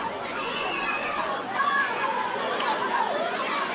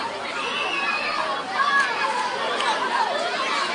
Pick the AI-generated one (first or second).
first